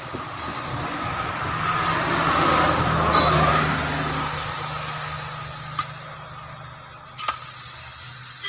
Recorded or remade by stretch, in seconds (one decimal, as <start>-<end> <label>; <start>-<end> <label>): 0.0-0.7 recorded; 0.7-1.8 remade; 1.8-2.8 recorded; 2.8-3.5 remade; 3.5-8.5 recorded